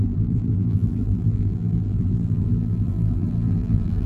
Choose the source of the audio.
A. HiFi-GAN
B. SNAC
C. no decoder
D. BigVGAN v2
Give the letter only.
D